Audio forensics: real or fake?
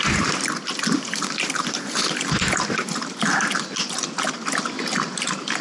real